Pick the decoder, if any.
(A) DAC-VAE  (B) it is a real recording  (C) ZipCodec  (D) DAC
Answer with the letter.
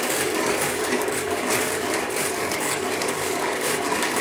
D